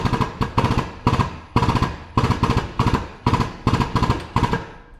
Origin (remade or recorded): recorded